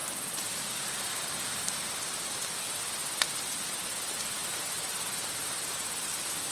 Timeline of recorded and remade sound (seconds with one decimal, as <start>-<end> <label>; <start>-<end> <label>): 0.0-6.5 recorded